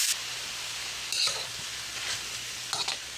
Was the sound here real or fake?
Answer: real